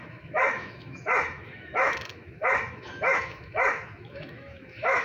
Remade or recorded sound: remade